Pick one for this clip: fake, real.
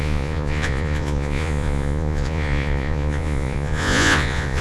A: fake